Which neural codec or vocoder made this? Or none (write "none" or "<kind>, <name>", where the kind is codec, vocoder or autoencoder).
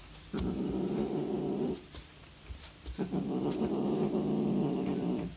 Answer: vocoder, BigVGAN v2